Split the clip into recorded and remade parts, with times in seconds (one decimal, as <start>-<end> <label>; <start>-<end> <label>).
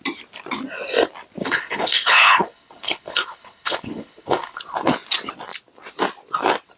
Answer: 0.0-1.4 recorded; 1.4-4.6 remade; 4.6-6.8 recorded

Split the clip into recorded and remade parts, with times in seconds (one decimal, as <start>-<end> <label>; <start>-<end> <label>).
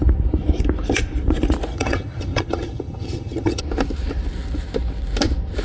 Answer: 0.0-1.7 recorded; 1.7-3.6 remade; 3.6-5.6 recorded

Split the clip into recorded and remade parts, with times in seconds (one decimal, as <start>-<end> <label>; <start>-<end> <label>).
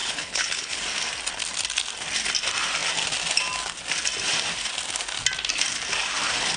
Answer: 0.0-0.8 remade; 0.8-6.6 recorded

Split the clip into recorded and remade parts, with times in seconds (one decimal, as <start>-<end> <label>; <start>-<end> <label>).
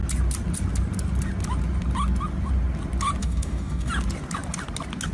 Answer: 0.0-3.2 recorded; 3.2-3.9 remade; 3.9-5.1 recorded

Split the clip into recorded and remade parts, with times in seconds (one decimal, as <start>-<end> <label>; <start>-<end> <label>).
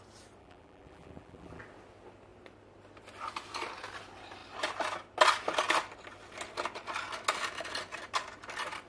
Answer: 0.0-0.4 recorded; 0.4-1.6 remade; 1.6-8.9 recorded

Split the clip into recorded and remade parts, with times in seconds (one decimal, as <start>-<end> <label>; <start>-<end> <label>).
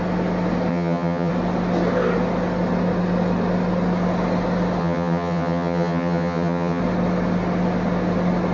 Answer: 0.0-0.7 recorded; 0.7-1.3 remade; 1.3-4.8 recorded; 4.8-6.8 remade; 6.8-8.5 recorded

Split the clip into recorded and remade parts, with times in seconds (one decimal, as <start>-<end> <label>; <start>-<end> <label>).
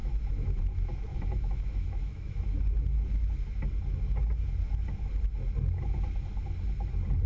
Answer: 0.0-0.6 remade; 0.6-1.1 recorded; 1.1-2.6 remade; 2.6-7.3 recorded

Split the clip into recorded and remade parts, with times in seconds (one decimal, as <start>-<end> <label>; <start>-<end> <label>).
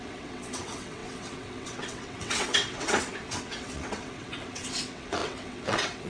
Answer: 0.0-6.1 remade